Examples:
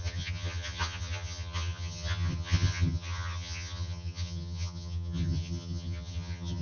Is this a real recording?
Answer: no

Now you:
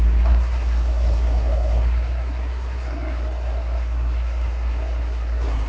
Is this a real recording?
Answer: no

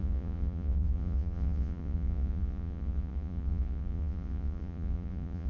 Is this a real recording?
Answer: no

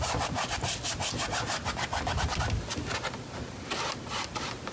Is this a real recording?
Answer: yes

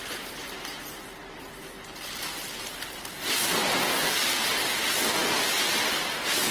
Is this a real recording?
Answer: yes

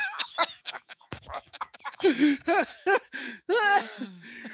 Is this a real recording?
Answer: no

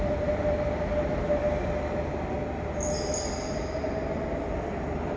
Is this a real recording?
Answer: yes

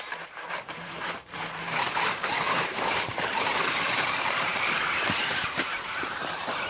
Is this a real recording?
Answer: no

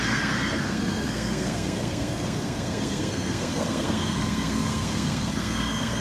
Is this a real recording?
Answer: no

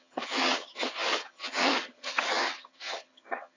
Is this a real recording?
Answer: no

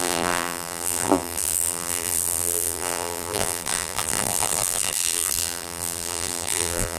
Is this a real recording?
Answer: no